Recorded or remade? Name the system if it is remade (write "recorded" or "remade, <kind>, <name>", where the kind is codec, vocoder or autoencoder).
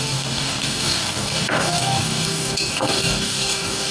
remade, codec, DAC